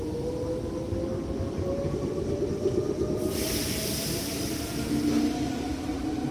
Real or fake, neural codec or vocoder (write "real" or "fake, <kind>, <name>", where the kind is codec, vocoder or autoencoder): real